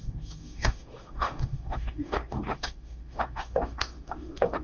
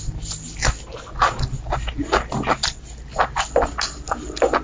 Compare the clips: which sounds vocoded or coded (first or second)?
first